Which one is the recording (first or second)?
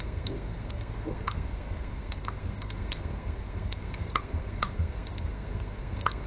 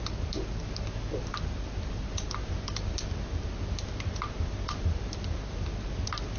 second